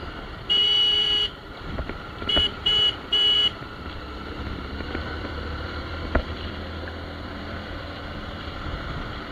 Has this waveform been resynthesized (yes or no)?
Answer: yes